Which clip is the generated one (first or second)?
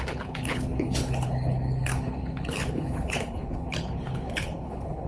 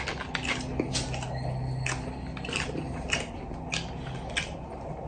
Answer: first